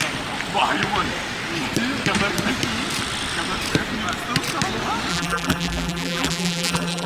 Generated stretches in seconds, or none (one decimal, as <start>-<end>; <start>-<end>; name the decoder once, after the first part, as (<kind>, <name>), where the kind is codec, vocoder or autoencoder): 5.1-7.1 (vocoder, BigVGAN v2)